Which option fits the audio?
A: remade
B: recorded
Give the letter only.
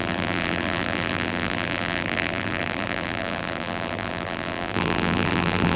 A